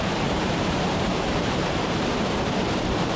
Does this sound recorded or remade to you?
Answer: remade